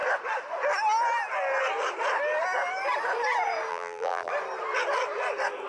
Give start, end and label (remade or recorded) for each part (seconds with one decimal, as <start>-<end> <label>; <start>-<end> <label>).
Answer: 0.0-3.7 recorded; 3.7-4.3 remade; 4.3-5.7 recorded